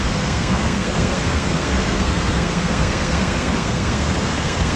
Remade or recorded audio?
remade